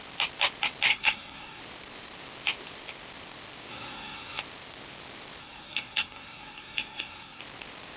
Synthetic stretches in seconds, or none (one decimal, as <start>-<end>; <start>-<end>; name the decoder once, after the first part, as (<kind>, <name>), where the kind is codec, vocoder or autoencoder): 0.9-1.6 (codec, SNAC); 3.7-4.4; 5.4-7.4